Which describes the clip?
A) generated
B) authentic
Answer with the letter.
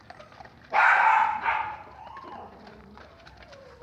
B